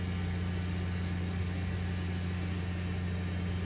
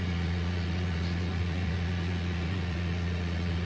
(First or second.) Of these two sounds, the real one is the first